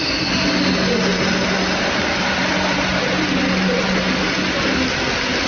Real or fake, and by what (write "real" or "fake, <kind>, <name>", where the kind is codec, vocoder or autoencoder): real